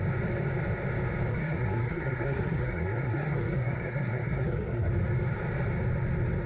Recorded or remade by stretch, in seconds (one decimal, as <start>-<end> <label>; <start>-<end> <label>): 0.0-1.3 recorded; 1.3-4.9 remade; 4.9-6.5 recorded